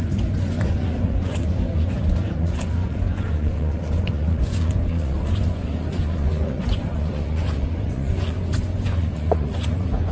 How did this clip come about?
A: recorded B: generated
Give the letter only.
B